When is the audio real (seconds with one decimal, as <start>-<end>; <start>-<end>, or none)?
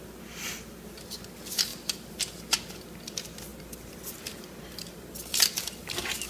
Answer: 0.0-1.7; 2.4-3.5; 4.1-4.8; 5.8-6.3